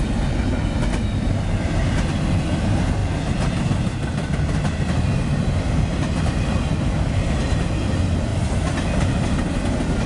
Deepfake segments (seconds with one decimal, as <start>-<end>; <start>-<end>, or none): none